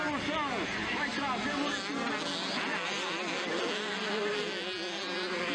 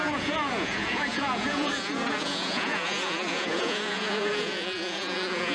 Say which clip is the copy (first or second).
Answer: second